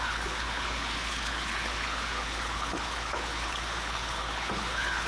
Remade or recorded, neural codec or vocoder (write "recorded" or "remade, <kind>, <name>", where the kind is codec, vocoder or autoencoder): remade, codec, HILCodec